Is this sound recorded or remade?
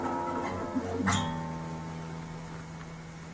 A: recorded